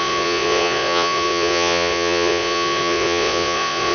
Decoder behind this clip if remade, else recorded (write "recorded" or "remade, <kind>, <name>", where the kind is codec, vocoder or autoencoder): remade, vocoder, Vocos